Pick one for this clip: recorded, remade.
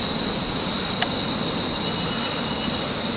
recorded